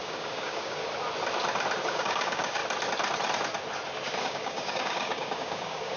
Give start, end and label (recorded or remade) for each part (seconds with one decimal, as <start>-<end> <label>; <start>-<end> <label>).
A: 0.0-0.8 remade; 0.8-1.8 recorded; 1.8-2.6 remade; 2.6-4.2 recorded; 4.2-6.0 remade